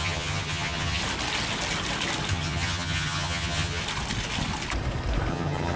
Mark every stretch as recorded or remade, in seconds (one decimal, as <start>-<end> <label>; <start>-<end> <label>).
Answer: 0.0-1.0 remade; 1.0-2.3 recorded; 2.3-3.8 remade; 3.8-5.3 recorded; 5.3-5.8 remade